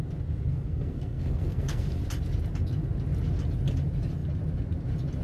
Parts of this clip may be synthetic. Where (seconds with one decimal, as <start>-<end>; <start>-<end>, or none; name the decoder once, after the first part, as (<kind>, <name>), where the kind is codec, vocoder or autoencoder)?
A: 0.5-2.0 (codec, SNAC)